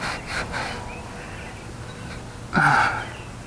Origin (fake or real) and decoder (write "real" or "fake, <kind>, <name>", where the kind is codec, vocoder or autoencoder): real